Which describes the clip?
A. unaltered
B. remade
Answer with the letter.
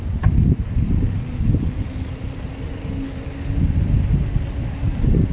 A